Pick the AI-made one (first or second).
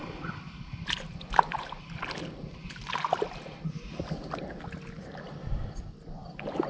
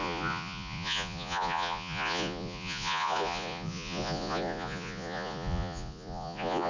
second